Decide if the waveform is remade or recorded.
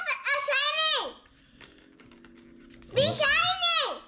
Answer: recorded